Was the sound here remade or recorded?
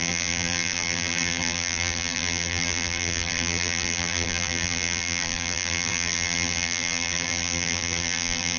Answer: remade